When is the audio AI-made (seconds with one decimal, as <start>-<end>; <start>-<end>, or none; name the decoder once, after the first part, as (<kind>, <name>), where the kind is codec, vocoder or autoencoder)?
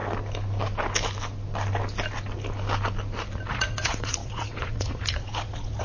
3.5-5.8 (vocoder, Vocos)